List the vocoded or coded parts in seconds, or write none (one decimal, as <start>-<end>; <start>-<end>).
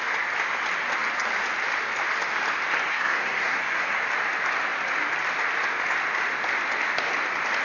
2.9-4.0